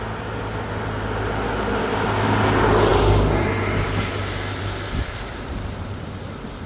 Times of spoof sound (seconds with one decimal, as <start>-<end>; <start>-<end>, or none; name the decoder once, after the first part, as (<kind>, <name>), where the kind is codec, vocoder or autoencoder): none